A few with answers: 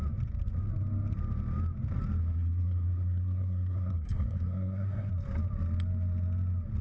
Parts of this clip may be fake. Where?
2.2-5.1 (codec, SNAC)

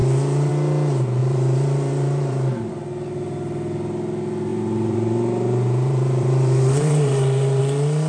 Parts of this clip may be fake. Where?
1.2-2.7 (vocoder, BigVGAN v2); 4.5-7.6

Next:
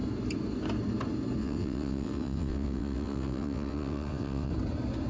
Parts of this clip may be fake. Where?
1.4-4.5 (vocoder, WaveNeXt)